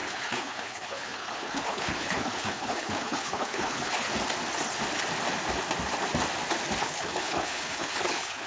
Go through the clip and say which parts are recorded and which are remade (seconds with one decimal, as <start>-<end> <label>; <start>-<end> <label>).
0.0-4.1 remade; 4.1-6.8 recorded; 6.8-8.5 remade